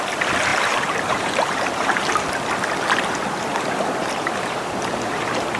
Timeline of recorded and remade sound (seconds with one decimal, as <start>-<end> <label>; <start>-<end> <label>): 0.0-0.5 recorded; 0.5-2.3 remade; 2.3-4.0 recorded; 4.0-4.6 remade; 4.6-5.6 recorded